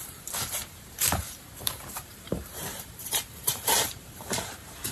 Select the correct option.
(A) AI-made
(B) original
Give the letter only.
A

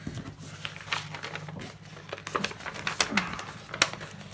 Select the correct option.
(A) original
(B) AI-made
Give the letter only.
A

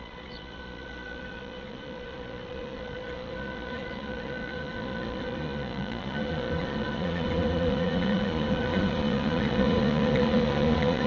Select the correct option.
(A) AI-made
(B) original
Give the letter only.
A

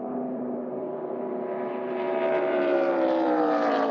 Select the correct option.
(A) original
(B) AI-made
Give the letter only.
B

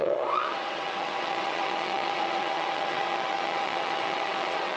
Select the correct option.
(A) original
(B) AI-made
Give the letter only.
B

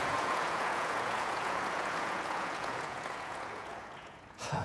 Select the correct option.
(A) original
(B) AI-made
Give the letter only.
B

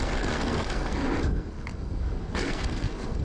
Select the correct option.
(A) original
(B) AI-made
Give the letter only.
B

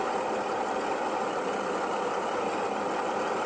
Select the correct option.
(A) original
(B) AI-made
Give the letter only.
A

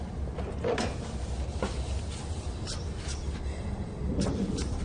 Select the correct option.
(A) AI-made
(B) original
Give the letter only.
B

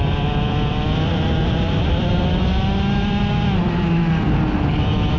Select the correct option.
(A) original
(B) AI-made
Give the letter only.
A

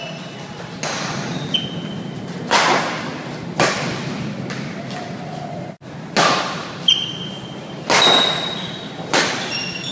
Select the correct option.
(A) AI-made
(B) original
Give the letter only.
B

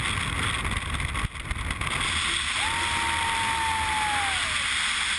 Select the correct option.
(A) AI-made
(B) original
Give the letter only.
B